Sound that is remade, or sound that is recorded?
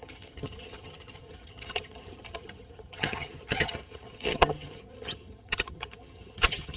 remade